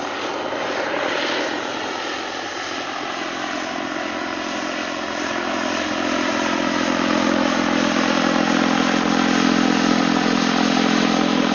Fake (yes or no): no